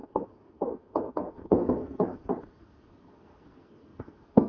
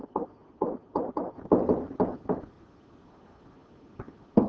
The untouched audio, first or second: second